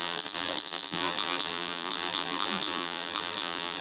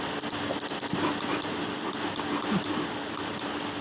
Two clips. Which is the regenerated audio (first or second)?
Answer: first